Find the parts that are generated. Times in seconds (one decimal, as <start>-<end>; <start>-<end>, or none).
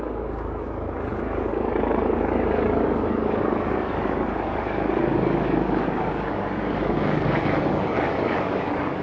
0.0-9.0